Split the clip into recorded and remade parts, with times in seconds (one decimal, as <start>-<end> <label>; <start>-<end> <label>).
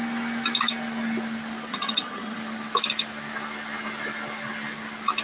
0.0-1.7 recorded; 1.7-2.4 remade; 2.4-5.2 recorded